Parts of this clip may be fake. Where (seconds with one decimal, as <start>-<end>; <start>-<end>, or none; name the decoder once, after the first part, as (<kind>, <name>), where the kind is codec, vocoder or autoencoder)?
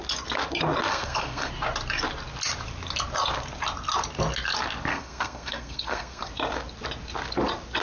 0.9-1.5 (codec, SNAC); 4.9-6.3